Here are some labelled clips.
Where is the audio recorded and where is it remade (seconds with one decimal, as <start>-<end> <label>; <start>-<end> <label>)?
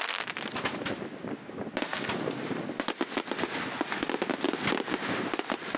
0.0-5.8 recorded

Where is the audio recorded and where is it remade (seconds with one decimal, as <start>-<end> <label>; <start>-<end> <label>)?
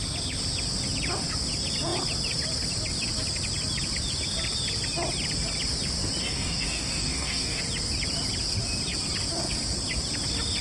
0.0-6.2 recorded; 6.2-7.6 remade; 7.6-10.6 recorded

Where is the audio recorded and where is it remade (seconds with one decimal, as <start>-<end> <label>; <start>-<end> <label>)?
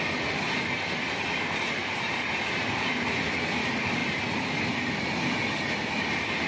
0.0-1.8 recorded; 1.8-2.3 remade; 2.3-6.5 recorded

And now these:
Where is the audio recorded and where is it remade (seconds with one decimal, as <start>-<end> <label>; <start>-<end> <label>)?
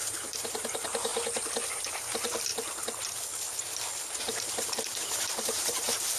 0.0-1.1 remade; 1.1-1.9 recorded; 1.9-2.5 remade; 2.5-4.2 recorded; 4.2-6.2 remade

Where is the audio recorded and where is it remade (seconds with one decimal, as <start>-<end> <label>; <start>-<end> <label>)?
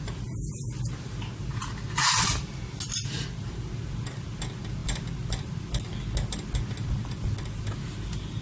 0.0-8.4 recorded